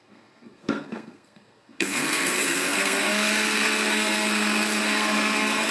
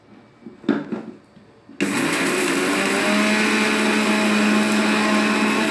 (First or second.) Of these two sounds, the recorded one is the second